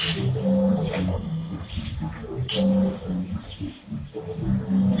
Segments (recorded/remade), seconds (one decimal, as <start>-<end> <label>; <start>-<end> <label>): 0.0-1.1 recorded; 1.1-1.7 remade; 1.7-5.0 recorded